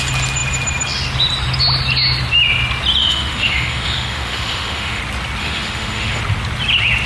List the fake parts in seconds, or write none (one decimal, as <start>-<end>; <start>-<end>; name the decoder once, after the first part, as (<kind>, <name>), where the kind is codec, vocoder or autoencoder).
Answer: 3.0-5.0 (autoencoder, DAC-VAE); 5.4-6.2